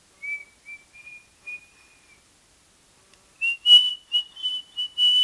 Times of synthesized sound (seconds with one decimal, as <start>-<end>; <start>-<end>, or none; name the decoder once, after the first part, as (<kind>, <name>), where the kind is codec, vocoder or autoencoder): 3.9-4.5 (vocoder, BigVGAN v2)